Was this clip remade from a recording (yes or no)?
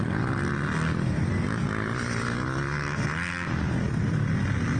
no